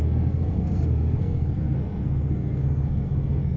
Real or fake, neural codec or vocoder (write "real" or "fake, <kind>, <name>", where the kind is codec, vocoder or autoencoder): fake, codec, SNAC